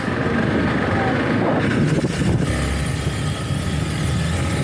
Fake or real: real